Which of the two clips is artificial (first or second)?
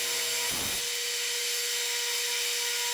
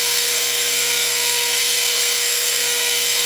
second